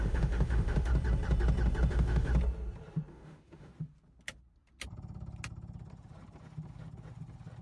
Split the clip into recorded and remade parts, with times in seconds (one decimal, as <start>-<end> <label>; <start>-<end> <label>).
0.0-0.9 remade; 0.9-1.9 recorded; 1.9-2.3 remade; 2.3-3.1 recorded; 3.1-3.7 remade; 3.7-7.6 recorded